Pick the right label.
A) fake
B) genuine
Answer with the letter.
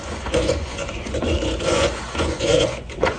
A